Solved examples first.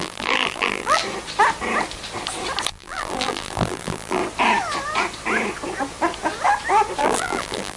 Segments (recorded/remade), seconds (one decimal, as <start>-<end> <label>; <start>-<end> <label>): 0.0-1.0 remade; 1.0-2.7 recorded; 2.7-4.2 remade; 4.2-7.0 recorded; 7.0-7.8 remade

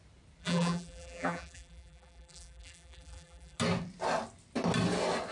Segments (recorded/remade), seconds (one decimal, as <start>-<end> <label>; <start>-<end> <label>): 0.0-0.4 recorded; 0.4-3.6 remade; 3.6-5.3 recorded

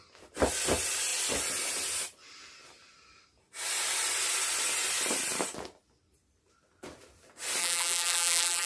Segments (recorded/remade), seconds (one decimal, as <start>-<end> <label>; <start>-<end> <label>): 0.0-7.6 recorded; 7.6-8.7 remade

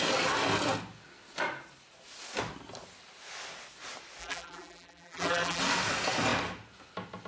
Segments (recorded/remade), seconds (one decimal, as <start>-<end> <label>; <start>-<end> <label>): 0.0-4.2 recorded; 4.2-5.6 remade; 5.6-7.3 recorded